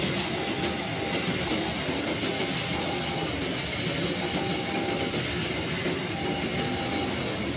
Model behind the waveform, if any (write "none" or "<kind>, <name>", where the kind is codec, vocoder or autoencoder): none